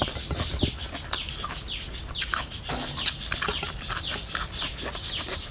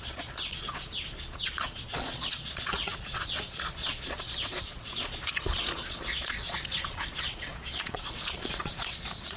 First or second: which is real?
first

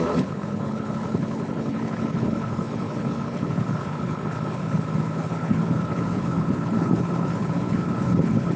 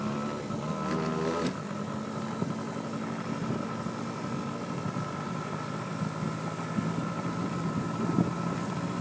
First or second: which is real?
second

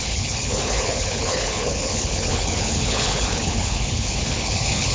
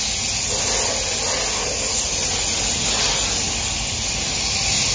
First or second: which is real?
second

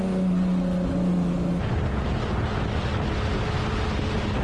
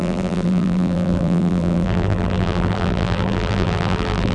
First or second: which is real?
first